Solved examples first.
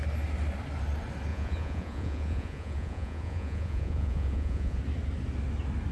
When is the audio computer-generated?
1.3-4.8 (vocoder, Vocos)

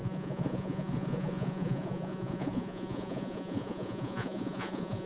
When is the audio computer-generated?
0.0-5.1 (vocoder, Vocos)

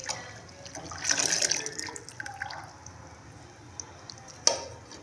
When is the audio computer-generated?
none

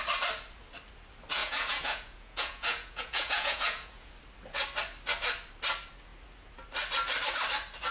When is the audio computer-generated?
1.4-4.1 (vocoder, Vocos)